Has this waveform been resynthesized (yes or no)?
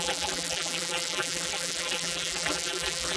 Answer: yes